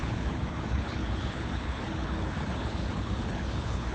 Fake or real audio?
fake